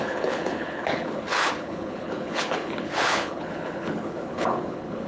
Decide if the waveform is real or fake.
fake